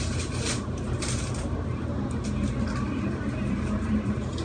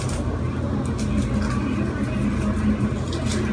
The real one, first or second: second